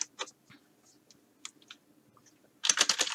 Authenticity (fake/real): real